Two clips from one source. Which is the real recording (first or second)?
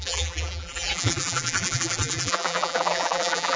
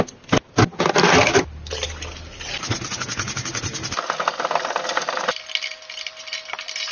second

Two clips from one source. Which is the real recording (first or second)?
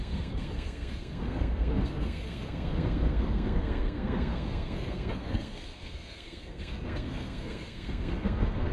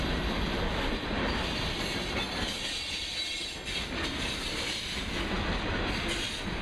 second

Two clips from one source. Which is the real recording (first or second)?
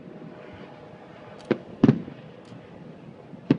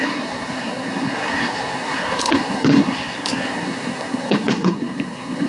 first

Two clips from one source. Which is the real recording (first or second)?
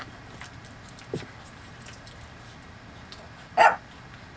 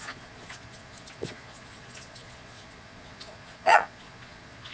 first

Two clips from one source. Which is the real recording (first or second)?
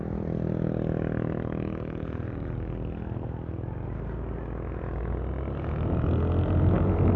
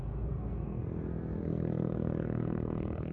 first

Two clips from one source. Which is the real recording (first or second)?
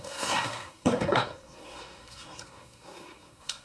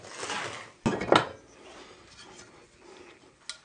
second